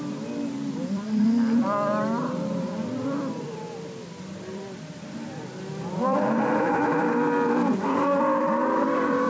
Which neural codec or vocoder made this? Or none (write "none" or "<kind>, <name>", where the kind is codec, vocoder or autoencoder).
vocoder, BigVGAN v2